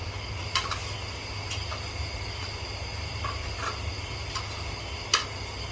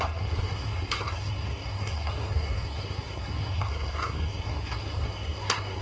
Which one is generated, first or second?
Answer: second